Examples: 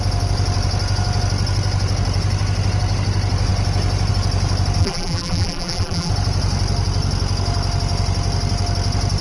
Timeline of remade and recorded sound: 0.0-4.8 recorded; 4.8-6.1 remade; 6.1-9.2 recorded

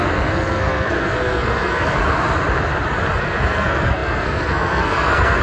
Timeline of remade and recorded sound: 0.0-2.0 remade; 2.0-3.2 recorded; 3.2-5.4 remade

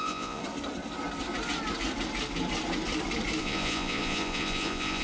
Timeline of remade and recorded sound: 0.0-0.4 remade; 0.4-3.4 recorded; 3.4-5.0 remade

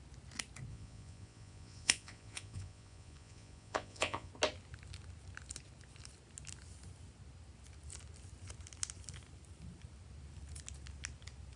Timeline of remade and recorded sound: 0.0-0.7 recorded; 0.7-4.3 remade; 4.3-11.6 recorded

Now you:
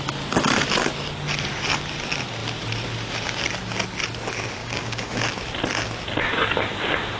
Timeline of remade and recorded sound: 0.0-4.6 recorded; 4.6-5.2 remade; 5.2-7.2 recorded